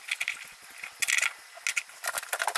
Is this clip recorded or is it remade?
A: recorded